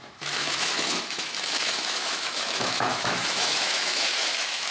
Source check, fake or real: fake